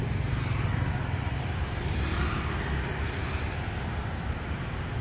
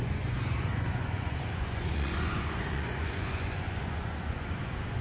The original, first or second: first